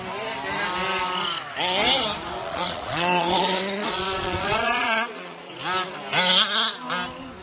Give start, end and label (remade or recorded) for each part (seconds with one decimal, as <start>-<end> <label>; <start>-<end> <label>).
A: 0.0-2.4 recorded; 2.4-5.5 remade; 5.5-7.4 recorded